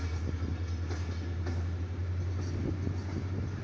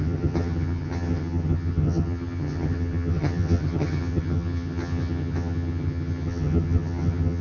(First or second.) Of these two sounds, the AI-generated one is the second